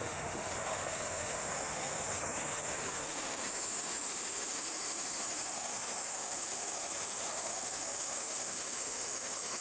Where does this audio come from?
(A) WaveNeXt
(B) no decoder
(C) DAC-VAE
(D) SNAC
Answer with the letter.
C